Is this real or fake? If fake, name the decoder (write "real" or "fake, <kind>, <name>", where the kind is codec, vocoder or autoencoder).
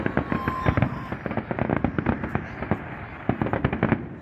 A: real